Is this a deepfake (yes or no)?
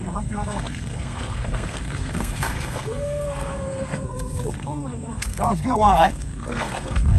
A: yes